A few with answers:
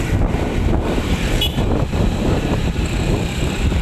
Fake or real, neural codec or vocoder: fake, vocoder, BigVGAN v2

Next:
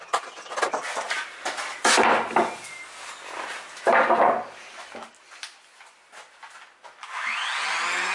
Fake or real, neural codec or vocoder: real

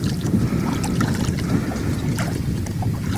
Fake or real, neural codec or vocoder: real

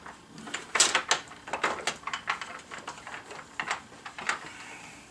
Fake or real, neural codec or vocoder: real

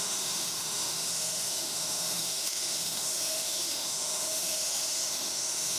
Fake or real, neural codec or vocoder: fake, autoencoder, DAC-VAE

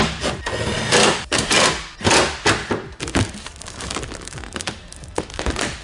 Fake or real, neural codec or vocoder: real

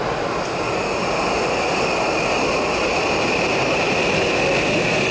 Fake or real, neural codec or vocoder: real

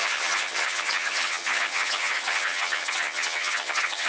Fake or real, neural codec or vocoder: fake, vocoder, HiFi-GAN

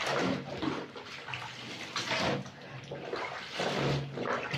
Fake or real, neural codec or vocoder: fake, vocoder, BigVGAN v2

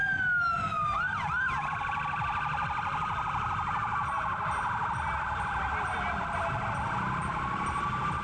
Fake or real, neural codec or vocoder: real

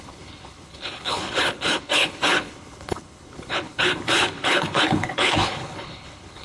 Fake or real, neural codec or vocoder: fake, codec, HILCodec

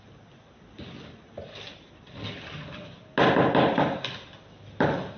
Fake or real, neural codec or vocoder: real